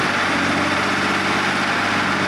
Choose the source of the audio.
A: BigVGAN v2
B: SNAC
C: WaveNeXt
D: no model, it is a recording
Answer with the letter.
D